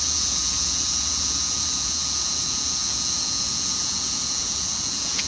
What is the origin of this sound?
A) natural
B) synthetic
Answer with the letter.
B